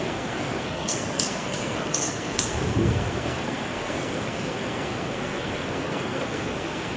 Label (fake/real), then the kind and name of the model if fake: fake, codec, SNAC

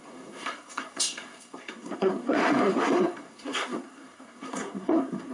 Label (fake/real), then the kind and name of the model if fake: fake, codec, SNAC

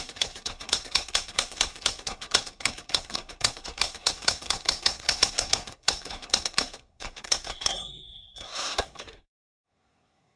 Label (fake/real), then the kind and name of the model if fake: fake, codec, SNAC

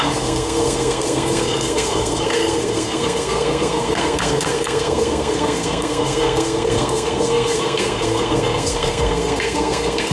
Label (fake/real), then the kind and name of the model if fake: fake, codec, SNAC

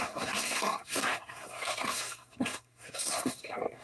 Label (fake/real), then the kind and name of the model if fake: fake, codec, SNAC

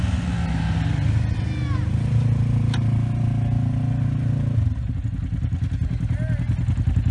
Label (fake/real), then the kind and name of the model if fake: real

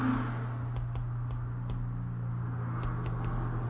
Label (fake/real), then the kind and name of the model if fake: real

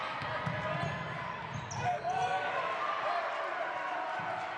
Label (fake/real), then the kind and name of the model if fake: real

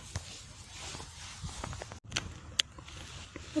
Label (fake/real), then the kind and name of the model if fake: real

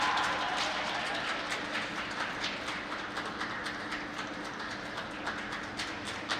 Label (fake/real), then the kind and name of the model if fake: real